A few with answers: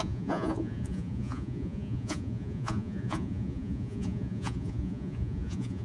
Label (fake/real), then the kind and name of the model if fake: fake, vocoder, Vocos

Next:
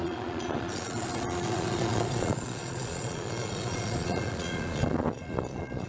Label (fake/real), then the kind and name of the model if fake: fake, vocoder, Vocos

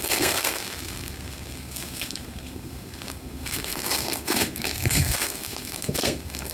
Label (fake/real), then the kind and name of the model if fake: fake, codec, SNAC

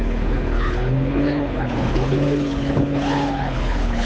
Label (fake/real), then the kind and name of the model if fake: fake, codec, HILCodec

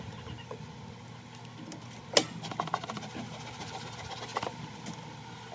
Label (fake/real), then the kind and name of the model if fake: real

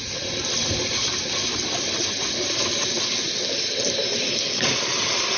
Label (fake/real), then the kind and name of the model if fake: real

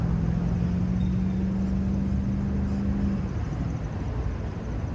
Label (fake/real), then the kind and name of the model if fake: real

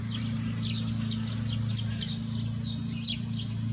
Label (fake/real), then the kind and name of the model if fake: real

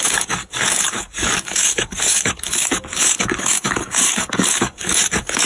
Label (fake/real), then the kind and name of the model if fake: fake, codec, DAC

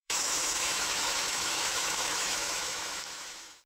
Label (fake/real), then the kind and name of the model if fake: fake, autoencoder, DAC-VAE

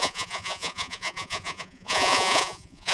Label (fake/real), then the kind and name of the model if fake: fake, vocoder, Vocos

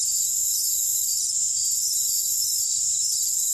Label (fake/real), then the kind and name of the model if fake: fake, vocoder, BigVGAN v2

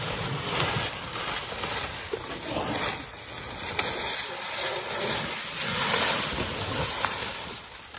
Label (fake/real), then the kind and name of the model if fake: real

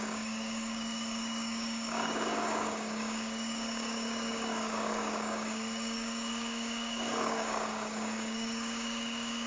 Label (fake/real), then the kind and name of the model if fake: fake, codec, DAC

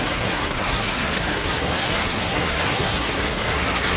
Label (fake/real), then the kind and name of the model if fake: fake, codec, SNAC